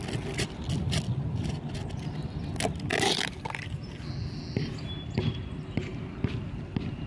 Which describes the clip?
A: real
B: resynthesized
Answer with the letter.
A